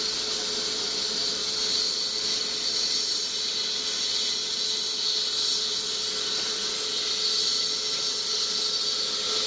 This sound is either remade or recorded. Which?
recorded